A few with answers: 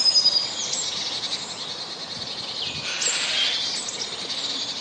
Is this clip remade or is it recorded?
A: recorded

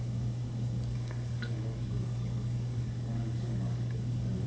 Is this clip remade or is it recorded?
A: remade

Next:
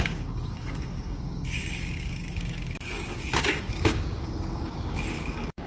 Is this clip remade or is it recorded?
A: remade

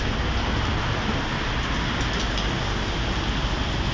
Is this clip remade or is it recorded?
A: recorded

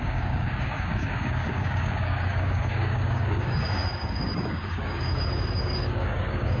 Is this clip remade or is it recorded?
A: remade